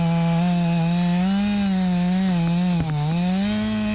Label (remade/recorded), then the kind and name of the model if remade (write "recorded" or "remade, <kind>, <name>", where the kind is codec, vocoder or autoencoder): recorded